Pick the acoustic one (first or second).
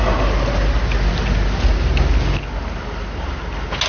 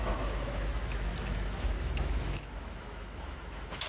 first